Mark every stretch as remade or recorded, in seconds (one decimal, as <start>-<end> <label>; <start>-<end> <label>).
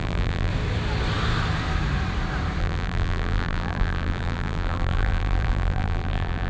0.0-0.5 remade; 0.5-2.6 recorded; 2.6-6.5 remade